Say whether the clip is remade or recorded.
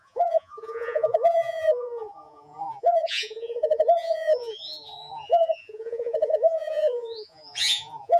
remade